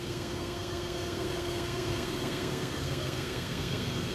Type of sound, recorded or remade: remade